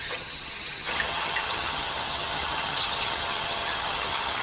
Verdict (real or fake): fake